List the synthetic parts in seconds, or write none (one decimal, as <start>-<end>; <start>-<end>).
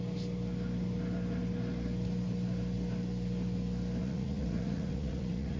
4.0-5.6